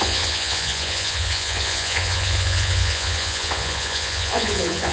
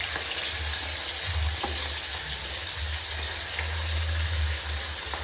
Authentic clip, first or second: second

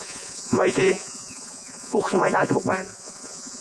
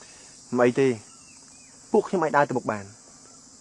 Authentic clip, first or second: second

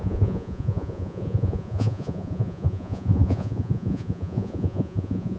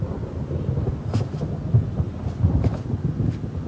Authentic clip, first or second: second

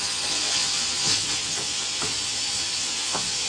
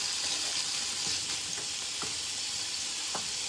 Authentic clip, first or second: second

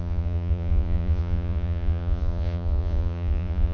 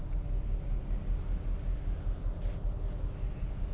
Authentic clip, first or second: second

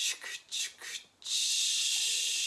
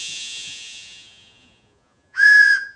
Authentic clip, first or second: first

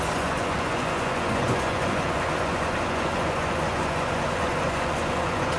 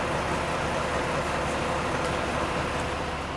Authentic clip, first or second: second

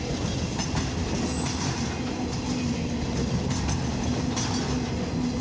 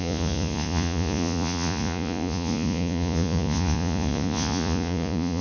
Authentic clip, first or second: first